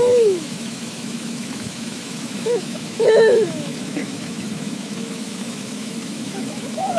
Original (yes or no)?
no